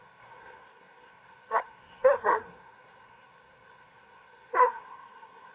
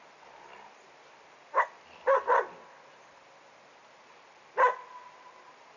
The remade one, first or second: first